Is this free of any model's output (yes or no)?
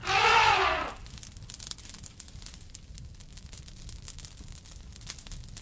yes